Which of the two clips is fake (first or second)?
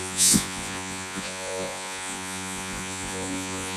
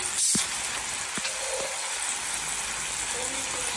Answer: first